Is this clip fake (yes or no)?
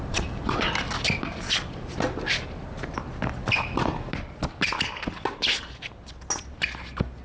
no